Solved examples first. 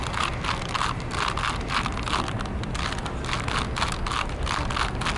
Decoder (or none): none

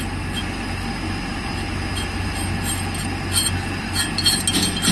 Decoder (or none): none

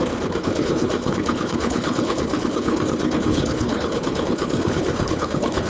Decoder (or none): codec, HILCodec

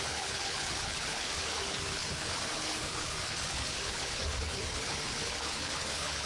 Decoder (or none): codec, HILCodec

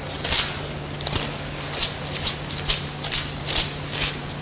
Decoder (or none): none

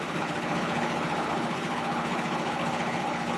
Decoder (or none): codec, HILCodec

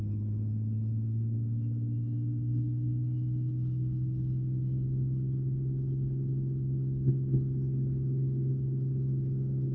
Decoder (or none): codec, HILCodec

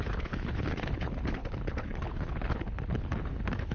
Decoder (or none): codec, HILCodec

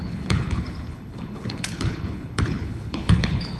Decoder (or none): codec, HILCodec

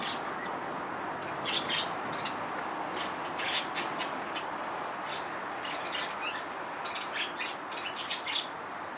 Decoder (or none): none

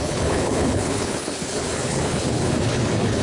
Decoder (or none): codec, HILCodec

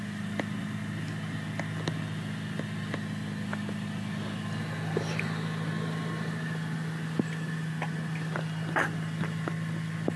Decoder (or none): none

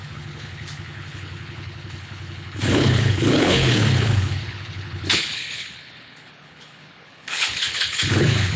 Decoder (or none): codec, HILCodec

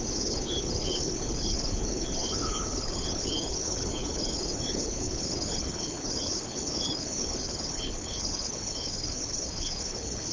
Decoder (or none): codec, HILCodec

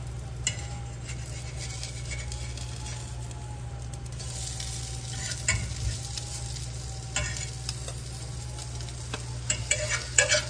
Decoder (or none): none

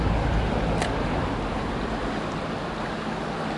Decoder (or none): none